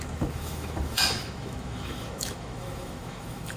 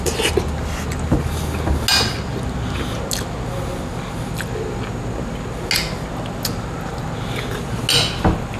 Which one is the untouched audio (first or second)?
second